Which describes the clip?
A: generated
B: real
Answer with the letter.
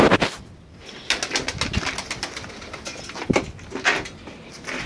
B